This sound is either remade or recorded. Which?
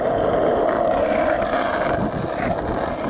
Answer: recorded